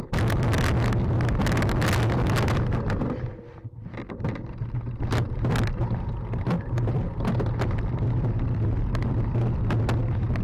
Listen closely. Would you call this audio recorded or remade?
recorded